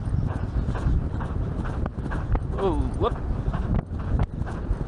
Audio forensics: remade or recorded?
recorded